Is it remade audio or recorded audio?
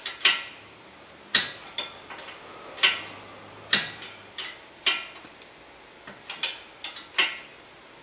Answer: recorded